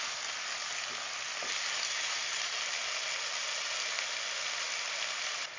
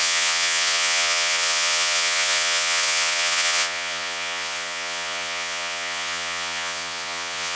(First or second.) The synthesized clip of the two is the second